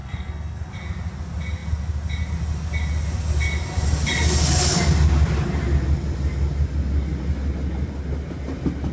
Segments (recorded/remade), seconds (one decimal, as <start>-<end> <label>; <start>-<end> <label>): 0.0-0.7 remade; 0.7-8.9 recorded